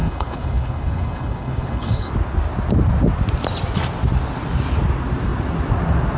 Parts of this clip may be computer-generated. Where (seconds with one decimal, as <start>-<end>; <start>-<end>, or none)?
0.0-2.1